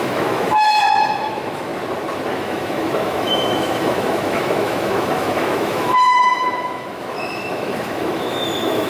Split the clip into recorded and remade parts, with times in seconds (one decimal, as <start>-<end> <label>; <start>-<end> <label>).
0.0-1.7 remade; 1.7-2.4 recorded; 2.4-8.9 remade